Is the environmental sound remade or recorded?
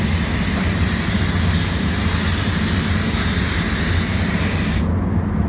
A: recorded